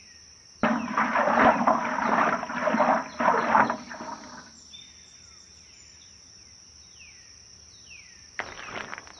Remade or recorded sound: recorded